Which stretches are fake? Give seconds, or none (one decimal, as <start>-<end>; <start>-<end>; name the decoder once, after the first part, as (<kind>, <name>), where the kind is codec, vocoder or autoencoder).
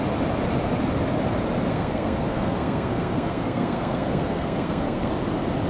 1.7-5.1 (codec, SNAC)